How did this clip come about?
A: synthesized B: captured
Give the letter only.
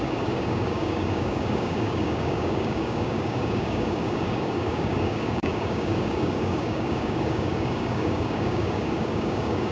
A